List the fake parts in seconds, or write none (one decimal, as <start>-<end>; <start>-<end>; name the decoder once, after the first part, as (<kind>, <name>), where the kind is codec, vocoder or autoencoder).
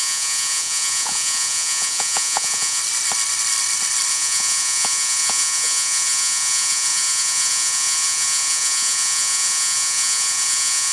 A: 0.0-2.8 (vocoder, Vocos); 4.1-10.9